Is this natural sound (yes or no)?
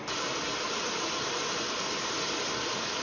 yes